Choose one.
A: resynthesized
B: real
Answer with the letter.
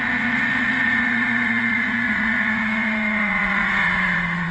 A